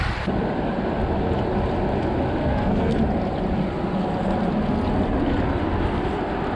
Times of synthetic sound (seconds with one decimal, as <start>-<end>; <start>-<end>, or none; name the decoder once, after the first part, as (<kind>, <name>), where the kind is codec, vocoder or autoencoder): 2.4-2.9 (codec, SNAC)